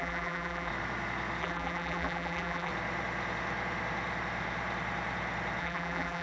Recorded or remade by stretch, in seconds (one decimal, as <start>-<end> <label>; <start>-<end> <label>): 0.0-0.7 remade; 0.7-1.4 recorded; 1.4-2.7 remade; 2.7-5.6 recorded; 5.6-6.2 remade